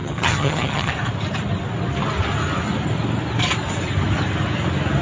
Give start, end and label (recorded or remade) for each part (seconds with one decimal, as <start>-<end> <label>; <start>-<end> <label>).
0.0-0.9 remade; 0.9-5.0 recorded